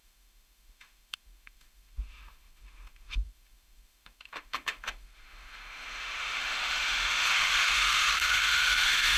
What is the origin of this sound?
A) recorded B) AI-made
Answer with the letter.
B